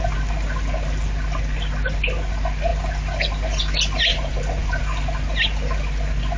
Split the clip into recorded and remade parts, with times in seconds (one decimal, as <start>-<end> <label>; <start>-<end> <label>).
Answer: 0.0-4.1 recorded; 4.1-4.8 remade; 4.8-6.4 recorded